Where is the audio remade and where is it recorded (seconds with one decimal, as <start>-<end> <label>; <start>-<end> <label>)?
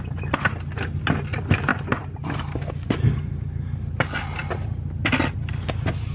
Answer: 0.0-6.1 recorded